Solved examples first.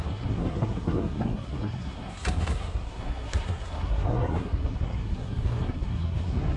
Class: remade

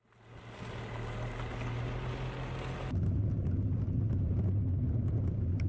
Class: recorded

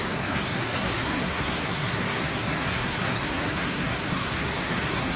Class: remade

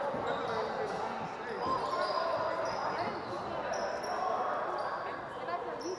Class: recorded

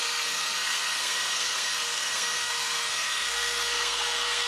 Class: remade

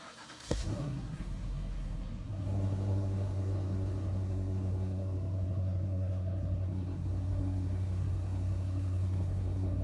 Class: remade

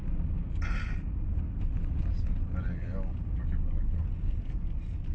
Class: recorded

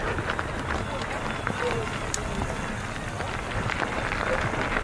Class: recorded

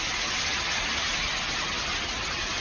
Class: recorded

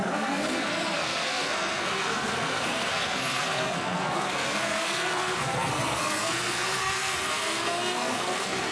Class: remade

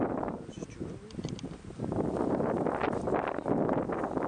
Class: recorded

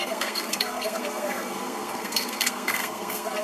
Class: remade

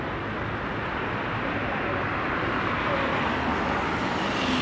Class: recorded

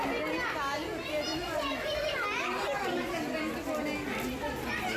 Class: recorded